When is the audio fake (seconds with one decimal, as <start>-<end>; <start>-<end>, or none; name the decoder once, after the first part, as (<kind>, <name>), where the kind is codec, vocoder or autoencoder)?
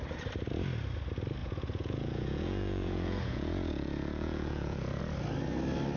1.4-5.0 (vocoder, Vocos)